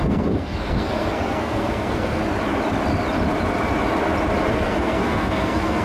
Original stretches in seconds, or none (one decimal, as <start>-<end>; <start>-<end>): 2.2-4.5